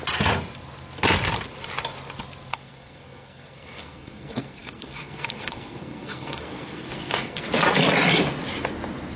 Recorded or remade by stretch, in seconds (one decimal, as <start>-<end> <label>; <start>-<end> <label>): 0.0-2.5 recorded; 2.5-7.5 remade; 7.5-9.2 recorded